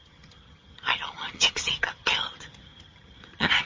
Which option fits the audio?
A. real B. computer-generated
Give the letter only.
B